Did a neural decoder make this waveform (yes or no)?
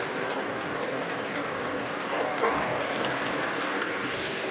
yes